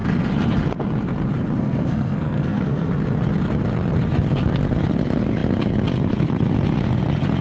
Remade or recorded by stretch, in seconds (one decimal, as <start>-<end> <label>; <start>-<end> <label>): 0.0-1.6 recorded; 1.6-2.9 remade; 2.9-7.4 recorded